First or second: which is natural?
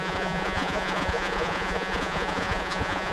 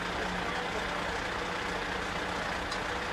second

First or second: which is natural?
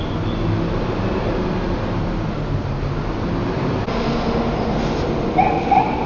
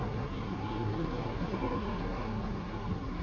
first